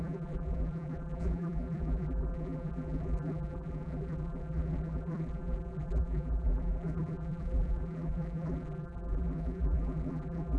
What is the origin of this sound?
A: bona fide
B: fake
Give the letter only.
B